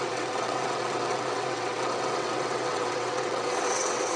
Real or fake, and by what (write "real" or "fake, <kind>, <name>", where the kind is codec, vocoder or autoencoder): fake, vocoder, WaveNeXt